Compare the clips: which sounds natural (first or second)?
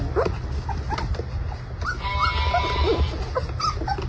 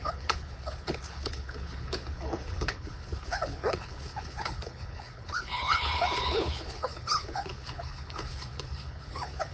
first